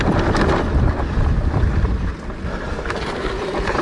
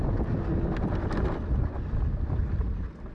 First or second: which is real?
second